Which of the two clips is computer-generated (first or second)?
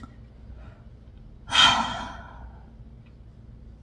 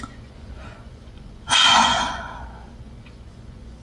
second